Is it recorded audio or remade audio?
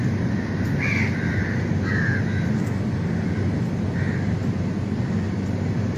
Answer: recorded